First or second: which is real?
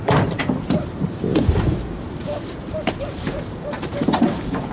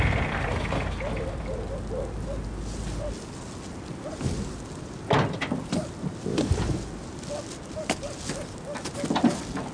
second